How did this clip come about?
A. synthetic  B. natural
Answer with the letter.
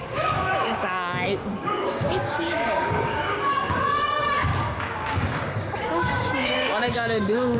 A